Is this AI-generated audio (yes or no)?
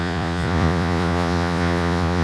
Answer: yes